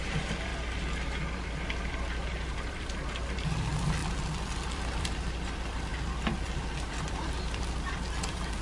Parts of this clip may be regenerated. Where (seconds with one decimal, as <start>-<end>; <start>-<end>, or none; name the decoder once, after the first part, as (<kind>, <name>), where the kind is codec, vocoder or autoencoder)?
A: 0.0-0.5 (vocoder, BigVGAN v2); 1.5-4.0; 4.7-5.9; 6.9-8.6